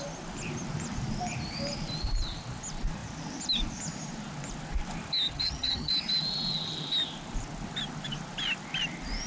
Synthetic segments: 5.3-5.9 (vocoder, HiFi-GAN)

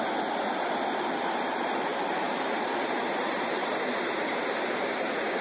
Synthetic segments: 1.9-5.4 (vocoder, BigVGAN v2)